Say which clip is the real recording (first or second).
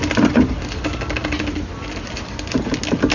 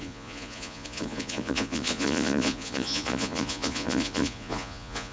first